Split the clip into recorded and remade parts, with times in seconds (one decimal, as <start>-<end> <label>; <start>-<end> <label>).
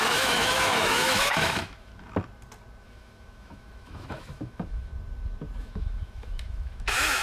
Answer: 0.0-1.9 remade; 1.9-2.8 recorded; 2.8-4.9 remade; 4.9-5.6 recorded; 5.6-7.2 remade